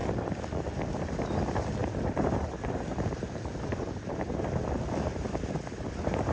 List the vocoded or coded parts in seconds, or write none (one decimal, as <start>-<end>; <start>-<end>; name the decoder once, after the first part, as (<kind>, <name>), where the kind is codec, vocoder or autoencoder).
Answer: 0.0-0.6 (vocoder, BigVGAN v2); 1.8-4.3